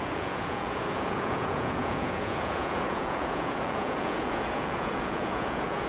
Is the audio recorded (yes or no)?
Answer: no